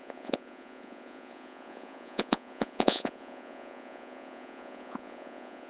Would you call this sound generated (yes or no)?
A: yes